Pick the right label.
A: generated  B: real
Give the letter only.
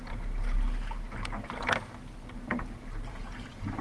B